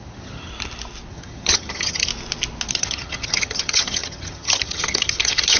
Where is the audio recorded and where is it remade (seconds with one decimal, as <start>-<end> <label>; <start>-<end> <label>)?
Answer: 0.0-0.5 remade; 0.5-1.1 recorded; 1.1-2.1 remade; 2.1-2.7 recorded; 2.7-5.6 remade